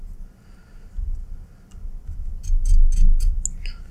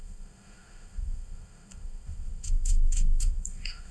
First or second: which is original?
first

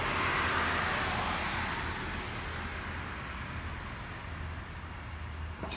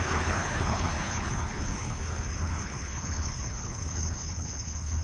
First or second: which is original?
first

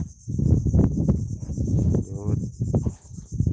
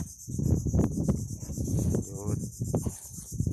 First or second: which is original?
first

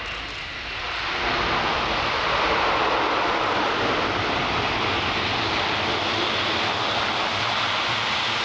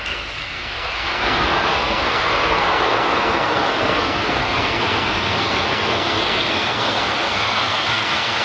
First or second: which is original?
first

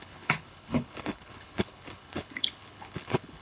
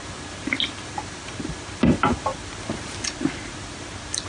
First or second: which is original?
second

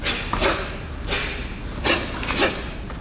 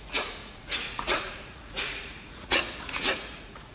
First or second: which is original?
first